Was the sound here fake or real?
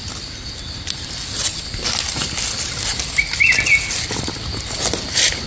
real